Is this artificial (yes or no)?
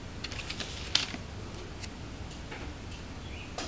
no